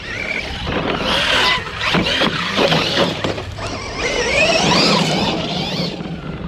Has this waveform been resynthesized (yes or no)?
no